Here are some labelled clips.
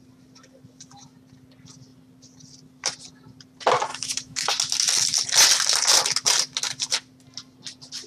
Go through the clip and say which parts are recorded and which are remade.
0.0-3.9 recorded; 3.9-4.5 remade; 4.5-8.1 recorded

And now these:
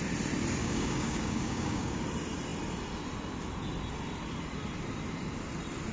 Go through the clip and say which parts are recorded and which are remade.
0.0-0.6 recorded; 0.6-2.0 remade; 2.0-5.9 recorded

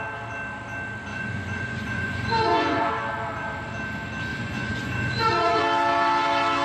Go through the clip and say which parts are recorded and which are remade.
0.0-1.1 recorded; 1.1-2.9 remade; 2.9-4.3 recorded; 4.3-5.6 remade; 5.6-6.6 recorded

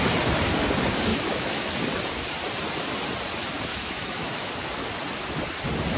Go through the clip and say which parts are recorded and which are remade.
0.0-1.1 recorded; 1.1-1.7 remade; 1.7-3.7 recorded; 3.7-4.5 remade; 4.5-6.0 recorded

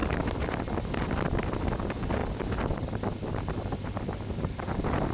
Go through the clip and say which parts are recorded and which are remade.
0.0-5.1 recorded

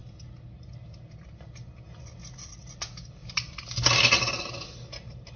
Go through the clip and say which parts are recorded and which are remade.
0.0-5.4 recorded

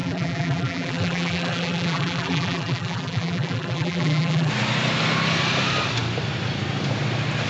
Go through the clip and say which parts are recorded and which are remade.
0.0-4.5 remade; 4.5-7.5 recorded